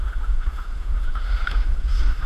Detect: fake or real fake